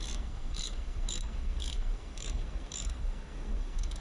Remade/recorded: remade